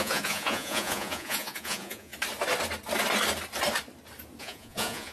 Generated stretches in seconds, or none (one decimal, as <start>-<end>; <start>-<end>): 0.0-2.1; 4.4-5.1